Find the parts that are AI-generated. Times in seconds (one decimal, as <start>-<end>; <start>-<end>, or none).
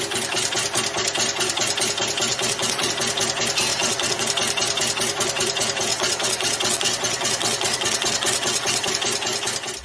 2.3-2.9; 3.7-4.2; 5.9-8.9